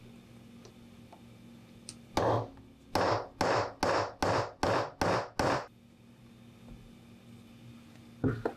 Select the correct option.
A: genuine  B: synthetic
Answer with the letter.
A